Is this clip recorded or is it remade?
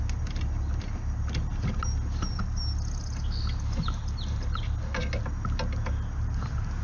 recorded